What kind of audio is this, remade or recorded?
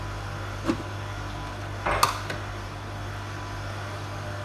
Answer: recorded